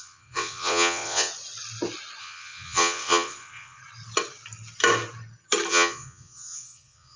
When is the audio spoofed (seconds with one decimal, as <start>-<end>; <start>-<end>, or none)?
0.0-1.3; 2.2-3.8; 5.7-7.2